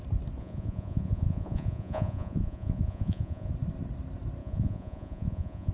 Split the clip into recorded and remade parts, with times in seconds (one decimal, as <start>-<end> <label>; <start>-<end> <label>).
0.0-0.4 recorded; 0.4-3.5 remade; 3.5-4.4 recorded; 4.4-5.7 remade